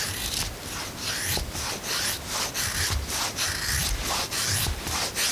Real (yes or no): yes